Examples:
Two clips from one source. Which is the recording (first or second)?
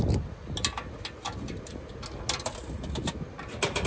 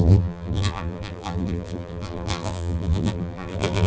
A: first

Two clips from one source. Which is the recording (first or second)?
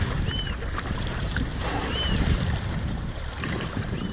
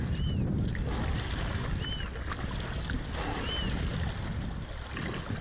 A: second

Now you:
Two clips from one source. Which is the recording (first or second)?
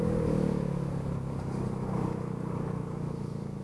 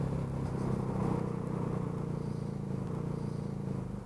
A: second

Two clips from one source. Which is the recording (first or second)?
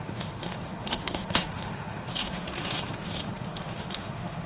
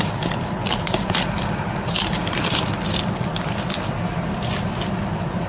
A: second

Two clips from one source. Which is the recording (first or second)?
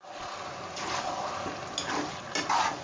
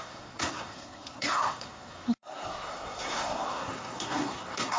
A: first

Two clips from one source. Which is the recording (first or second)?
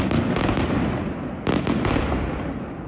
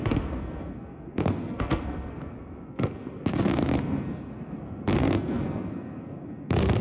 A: first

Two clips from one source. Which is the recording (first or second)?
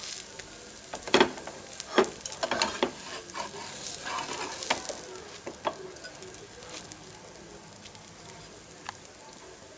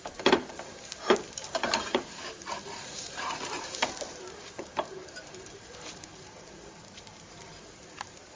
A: first